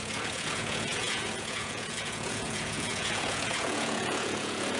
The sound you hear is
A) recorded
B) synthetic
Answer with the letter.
B